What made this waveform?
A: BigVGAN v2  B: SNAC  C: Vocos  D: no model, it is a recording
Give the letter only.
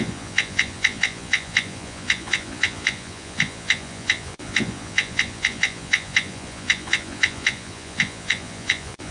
C